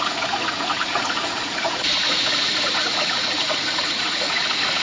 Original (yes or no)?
no